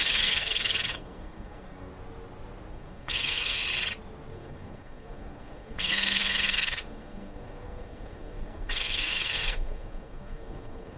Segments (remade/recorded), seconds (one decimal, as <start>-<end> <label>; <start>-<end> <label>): 0.0-1.9 remade; 1.9-2.7 recorded; 2.7-3.6 remade; 3.6-4.3 recorded; 4.3-11.0 remade